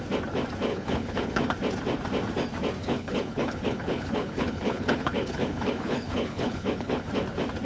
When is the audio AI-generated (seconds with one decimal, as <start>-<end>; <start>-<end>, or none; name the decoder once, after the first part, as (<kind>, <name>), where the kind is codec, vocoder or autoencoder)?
0.7-1.4 (codec, HILCodec); 2.8-7.1